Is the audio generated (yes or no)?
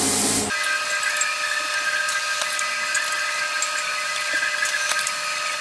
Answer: no